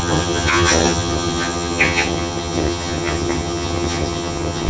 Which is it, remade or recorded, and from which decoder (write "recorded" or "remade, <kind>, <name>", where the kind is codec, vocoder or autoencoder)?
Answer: remade, vocoder, HiFi-GAN